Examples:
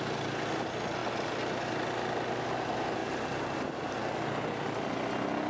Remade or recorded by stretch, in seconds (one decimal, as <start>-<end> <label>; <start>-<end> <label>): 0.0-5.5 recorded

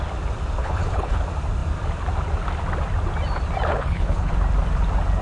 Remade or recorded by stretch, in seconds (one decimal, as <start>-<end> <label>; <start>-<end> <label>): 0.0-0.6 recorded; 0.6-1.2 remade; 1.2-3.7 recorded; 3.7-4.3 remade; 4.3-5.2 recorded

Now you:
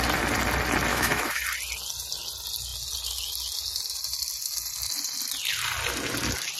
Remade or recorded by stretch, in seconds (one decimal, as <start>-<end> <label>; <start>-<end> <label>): 0.0-0.9 recorded; 0.9-1.4 remade; 1.4-6.6 recorded

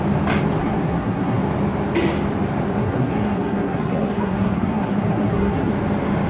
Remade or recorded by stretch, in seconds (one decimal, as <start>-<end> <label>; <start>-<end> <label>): 0.0-0.6 recorded; 0.6-1.4 remade; 1.4-2.7 recorded; 2.7-5.7 remade; 5.7-6.3 recorded

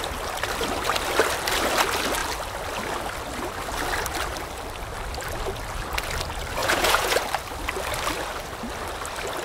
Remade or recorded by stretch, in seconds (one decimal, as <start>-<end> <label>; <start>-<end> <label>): 0.0-6.6 recorded; 6.6-7.2 remade; 7.2-9.4 recorded

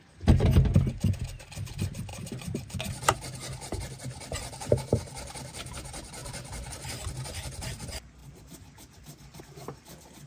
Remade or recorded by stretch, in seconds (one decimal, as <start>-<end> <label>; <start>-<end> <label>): 0.0-2.1 recorded; 2.1-4.7 remade; 4.7-6.2 recorded; 6.2-7.1 remade; 7.1-10.3 recorded

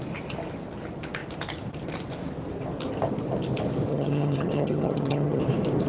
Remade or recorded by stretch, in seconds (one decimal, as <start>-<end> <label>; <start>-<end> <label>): 0.0-3.9 recorded; 3.9-5.4 remade; 5.4-5.9 recorded